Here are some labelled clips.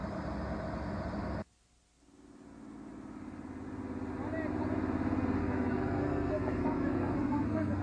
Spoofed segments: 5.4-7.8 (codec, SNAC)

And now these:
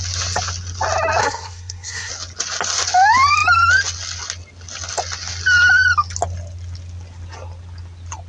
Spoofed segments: 1.2-2.1 (codec, SNAC)